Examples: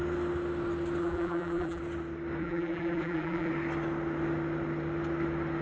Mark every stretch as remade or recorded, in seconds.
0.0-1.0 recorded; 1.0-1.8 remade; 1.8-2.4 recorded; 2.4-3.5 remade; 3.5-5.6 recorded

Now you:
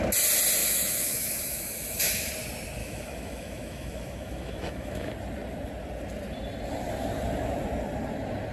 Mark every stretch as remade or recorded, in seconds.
0.0-0.6 recorded; 0.6-2.3 remade; 2.3-2.8 recorded; 2.8-5.1 remade; 5.1-8.5 recorded

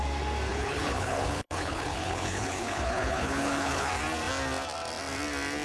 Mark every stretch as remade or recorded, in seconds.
0.0-0.5 recorded; 0.5-3.9 remade; 3.9-5.6 recorded

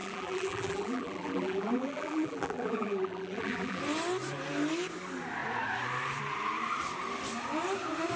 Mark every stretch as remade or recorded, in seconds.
0.0-3.8 remade; 3.8-8.2 recorded

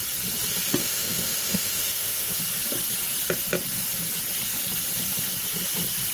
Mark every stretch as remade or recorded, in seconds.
0.0-0.8 recorded; 0.8-2.4 remade; 2.4-6.1 recorded

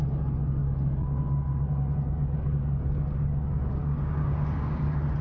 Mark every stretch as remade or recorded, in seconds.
0.0-3.8 recorded; 3.8-4.8 remade; 4.8-5.2 recorded

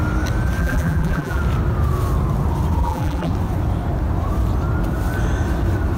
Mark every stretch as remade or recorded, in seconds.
0.0-0.6 recorded; 0.6-1.4 remade; 1.4-2.8 recorded; 2.8-3.3 remade; 3.3-6.0 recorded

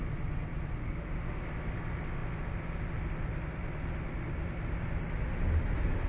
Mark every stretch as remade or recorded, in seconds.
0.0-0.8 recorded; 0.8-1.4 remade; 1.4-6.1 recorded